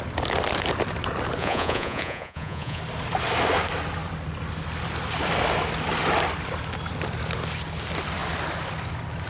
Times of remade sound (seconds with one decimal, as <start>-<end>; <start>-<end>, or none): 1.4-2.8